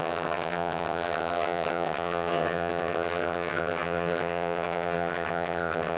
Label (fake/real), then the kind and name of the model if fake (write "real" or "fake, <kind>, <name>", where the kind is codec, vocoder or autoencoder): fake, vocoder, HiFi-GAN